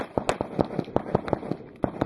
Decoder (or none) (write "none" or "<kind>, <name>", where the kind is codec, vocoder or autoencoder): none